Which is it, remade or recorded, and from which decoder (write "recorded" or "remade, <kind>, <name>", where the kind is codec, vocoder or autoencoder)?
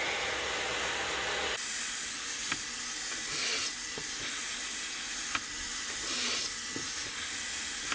recorded